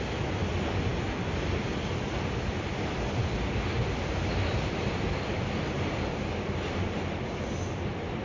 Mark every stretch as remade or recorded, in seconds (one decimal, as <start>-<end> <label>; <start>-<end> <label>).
0.0-8.2 recorded